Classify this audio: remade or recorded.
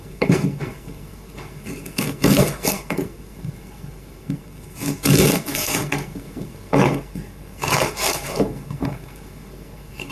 remade